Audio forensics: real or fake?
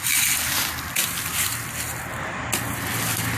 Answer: real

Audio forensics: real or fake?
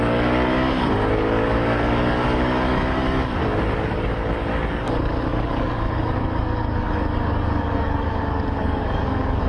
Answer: fake